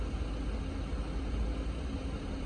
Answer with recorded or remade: recorded